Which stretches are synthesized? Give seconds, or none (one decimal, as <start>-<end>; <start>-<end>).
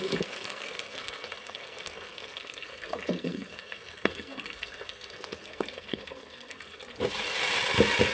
0.0-6.8